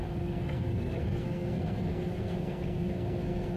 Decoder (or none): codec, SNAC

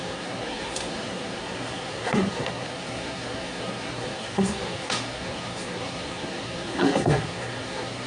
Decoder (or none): codec, SNAC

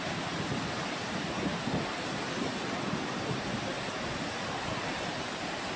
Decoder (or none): vocoder, BigVGAN v2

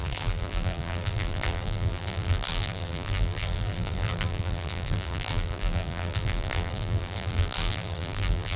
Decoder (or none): vocoder, BigVGAN v2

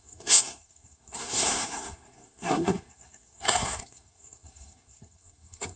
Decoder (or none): codec, SNAC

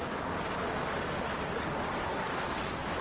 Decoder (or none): none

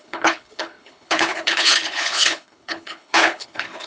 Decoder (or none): codec, HILCodec